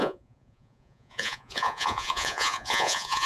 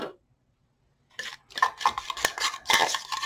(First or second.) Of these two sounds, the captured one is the second